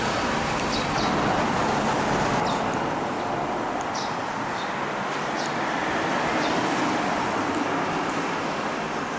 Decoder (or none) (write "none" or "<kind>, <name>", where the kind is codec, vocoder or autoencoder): vocoder, BigVGAN v2